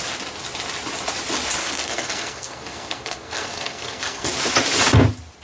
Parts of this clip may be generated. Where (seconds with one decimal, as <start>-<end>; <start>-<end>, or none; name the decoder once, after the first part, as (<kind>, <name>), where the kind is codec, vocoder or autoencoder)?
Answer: 1.6-4.3 (codec, SNAC)